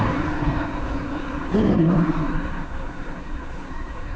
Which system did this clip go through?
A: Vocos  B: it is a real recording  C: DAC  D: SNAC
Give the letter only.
D